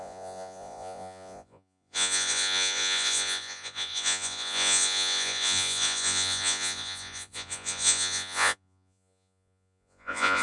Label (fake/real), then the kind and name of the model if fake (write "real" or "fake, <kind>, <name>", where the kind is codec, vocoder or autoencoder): fake, vocoder, Vocos